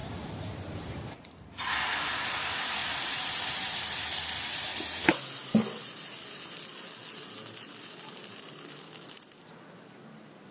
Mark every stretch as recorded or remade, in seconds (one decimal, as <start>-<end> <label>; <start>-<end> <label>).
0.0-1.7 remade; 1.7-2.8 recorded; 2.8-3.8 remade; 3.8-10.5 recorded